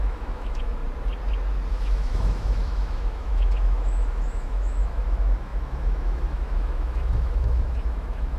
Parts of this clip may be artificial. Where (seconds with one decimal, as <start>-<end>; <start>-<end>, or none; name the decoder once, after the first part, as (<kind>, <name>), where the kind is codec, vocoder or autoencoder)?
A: 0.0-0.8 (autoencoder, DAC-VAE); 1.7-8.4